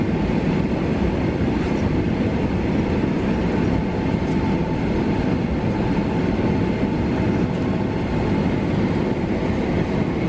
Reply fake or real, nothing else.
real